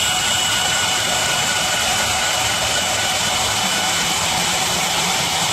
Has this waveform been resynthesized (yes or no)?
yes